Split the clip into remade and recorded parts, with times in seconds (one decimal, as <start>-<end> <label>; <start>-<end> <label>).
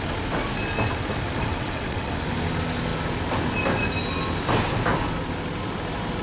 0.0-1.5 recorded; 1.5-2.1 remade; 2.1-6.2 recorded